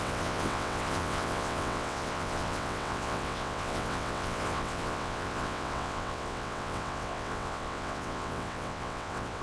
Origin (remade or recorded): remade